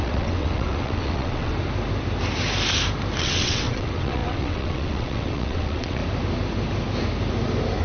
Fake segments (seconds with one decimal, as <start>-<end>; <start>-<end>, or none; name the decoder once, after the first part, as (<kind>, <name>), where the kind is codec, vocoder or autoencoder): 0.0-1.5 (vocoder, WaveNeXt); 3.2-6.0